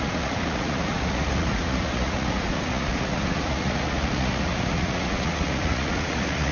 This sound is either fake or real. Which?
fake